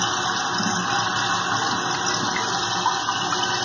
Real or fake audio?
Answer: real